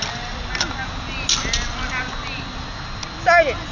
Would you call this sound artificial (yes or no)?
no